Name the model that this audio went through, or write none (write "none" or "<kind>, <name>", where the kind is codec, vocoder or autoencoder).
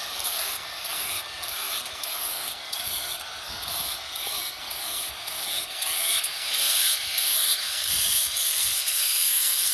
codec, SNAC